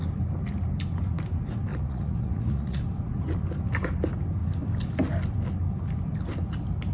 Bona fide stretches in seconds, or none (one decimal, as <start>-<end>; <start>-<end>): 0.0-1.7; 2.8-6.9